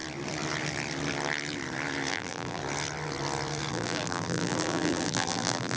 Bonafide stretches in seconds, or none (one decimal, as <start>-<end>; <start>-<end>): 0.0-2.1; 2.6-3.7